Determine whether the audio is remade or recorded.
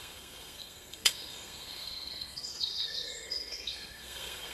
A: remade